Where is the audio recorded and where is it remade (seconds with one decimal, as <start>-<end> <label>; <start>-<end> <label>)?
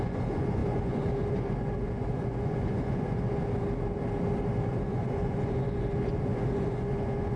0.0-3.4 remade; 3.4-4.9 recorded; 4.9-7.4 remade